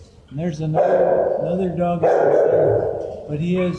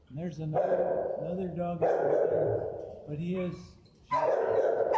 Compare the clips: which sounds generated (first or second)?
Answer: second